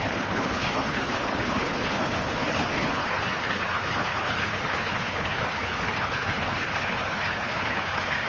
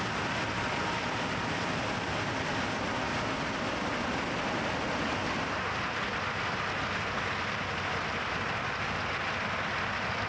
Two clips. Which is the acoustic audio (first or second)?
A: second